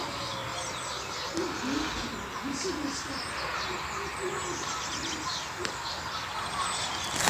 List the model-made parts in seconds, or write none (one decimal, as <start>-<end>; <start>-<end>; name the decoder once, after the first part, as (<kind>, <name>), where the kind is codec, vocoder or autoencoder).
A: 0.0-0.5 (vocoder, BigVGAN v2); 4.9-7.3